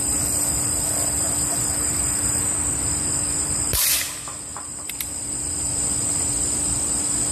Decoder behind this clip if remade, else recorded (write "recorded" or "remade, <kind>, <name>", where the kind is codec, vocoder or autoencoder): recorded